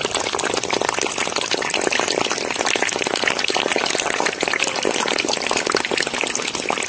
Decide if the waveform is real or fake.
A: real